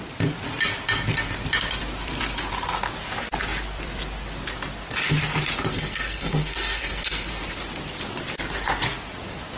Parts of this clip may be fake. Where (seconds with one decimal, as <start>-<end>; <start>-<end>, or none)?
5.7-7.3